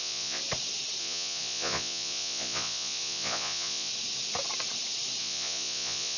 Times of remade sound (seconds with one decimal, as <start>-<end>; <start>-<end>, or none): 0.0-0.4; 1.0-3.9; 5.2-6.2